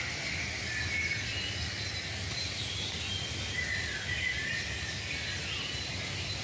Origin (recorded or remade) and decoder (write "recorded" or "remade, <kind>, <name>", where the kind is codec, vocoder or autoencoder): recorded